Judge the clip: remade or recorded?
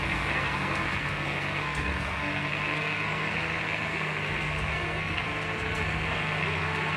remade